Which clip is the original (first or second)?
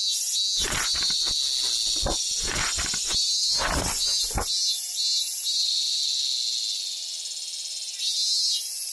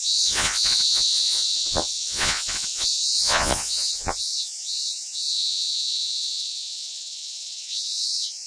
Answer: first